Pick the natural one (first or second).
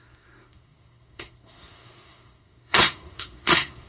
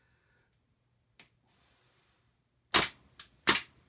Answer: second